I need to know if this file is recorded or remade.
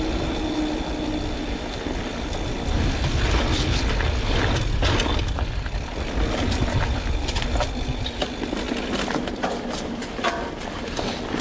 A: recorded